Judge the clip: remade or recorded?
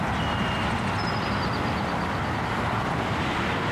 recorded